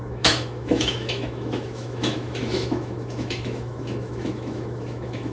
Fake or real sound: fake